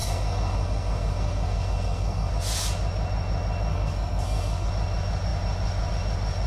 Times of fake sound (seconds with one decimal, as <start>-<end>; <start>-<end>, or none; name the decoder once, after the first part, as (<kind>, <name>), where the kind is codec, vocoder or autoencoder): 0.0-2.3 (codec, SNAC); 3.7-4.7